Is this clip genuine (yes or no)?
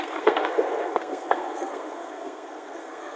no